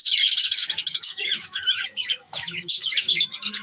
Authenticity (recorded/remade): remade